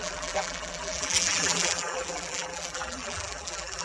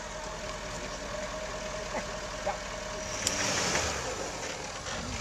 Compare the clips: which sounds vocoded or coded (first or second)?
first